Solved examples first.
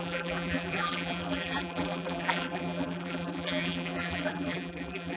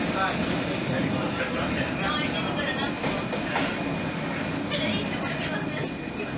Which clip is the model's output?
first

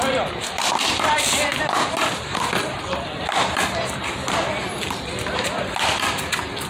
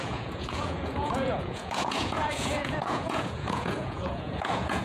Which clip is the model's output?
second